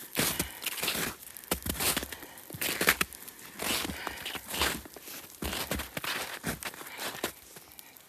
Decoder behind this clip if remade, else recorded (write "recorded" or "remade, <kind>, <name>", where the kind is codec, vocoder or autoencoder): recorded